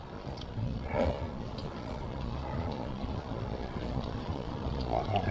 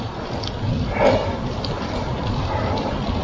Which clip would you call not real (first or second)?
first